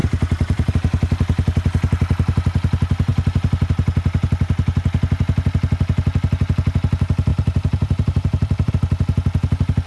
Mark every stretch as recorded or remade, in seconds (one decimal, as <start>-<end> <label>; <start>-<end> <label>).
0.0-0.7 remade; 0.7-7.3 recorded; 7.3-8.7 remade; 8.7-9.9 recorded